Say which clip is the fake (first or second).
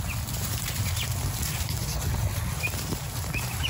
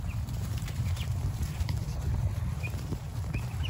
second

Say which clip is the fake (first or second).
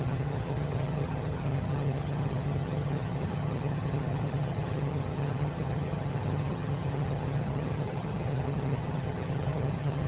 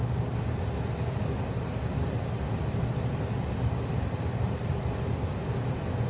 first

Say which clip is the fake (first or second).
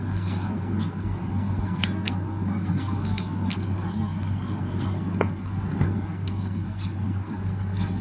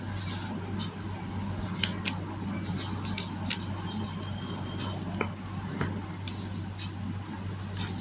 first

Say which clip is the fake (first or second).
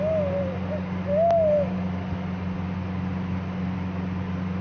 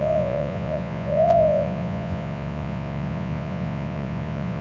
second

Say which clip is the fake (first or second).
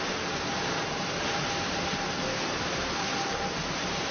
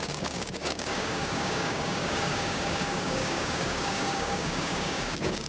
second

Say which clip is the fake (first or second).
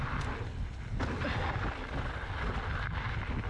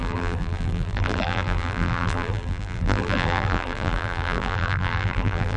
second